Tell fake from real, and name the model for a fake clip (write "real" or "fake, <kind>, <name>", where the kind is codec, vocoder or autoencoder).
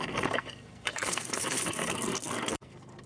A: fake, codec, SNAC